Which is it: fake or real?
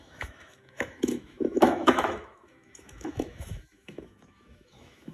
fake